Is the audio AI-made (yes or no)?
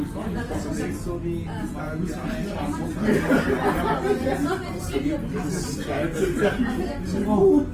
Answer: no